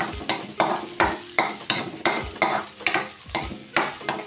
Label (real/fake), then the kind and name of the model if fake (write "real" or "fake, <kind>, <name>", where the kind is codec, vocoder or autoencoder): real